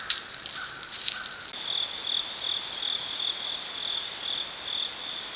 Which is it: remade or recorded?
recorded